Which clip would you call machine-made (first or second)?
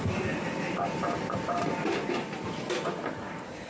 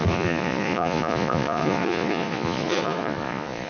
second